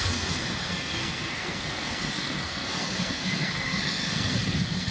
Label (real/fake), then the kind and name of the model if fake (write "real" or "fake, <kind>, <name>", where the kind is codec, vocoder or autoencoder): fake, codec, SNAC